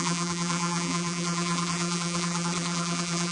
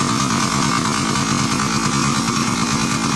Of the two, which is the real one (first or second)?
second